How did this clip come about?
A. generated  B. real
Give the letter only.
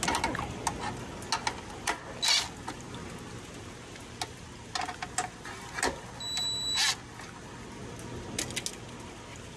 B